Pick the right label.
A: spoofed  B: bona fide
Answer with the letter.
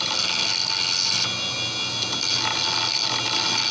B